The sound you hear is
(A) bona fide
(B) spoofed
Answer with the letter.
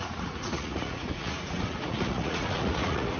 B